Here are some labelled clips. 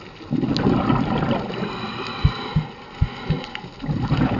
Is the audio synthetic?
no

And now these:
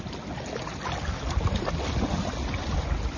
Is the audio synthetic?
no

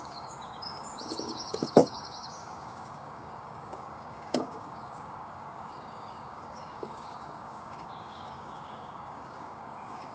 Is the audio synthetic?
yes